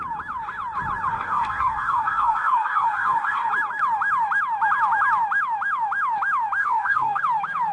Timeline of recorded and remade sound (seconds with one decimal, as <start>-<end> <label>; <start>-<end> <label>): 0.0-1.1 recorded; 1.1-3.5 remade; 3.5-6.6 recorded; 6.6-7.2 remade; 7.2-7.7 recorded